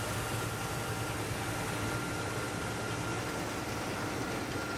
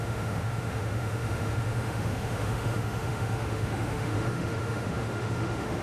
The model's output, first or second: second